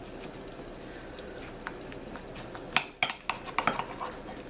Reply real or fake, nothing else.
real